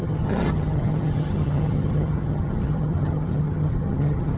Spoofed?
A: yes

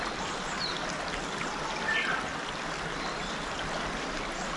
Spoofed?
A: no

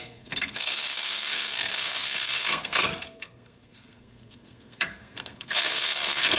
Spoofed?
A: yes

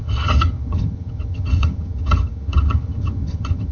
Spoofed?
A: yes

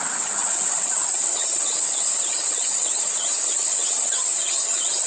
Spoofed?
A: yes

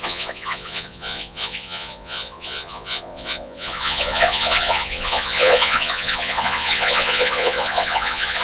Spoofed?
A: yes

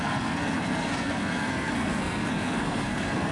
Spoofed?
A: yes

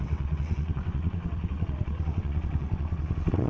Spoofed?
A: yes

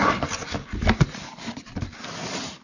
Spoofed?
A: no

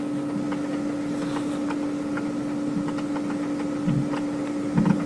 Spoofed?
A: no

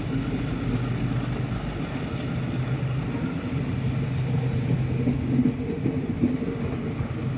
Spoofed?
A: no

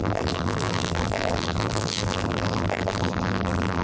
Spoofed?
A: yes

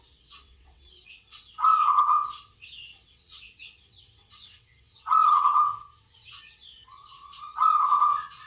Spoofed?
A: yes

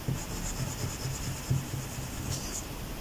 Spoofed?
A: no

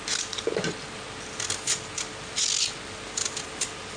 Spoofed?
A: no